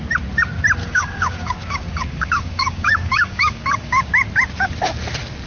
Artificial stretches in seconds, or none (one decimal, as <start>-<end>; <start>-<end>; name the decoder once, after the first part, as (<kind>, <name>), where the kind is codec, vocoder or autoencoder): 0.8-4.1 (codec, DAC)

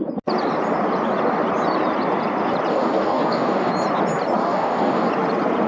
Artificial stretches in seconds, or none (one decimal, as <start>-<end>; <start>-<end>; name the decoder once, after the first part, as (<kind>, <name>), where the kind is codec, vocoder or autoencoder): 2.7-3.7 (codec, DAC); 4.4-5.1